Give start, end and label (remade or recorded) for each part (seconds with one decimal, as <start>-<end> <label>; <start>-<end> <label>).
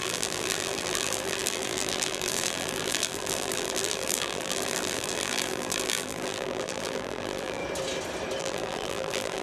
0.0-7.6 remade; 7.6-8.4 recorded; 8.4-9.4 remade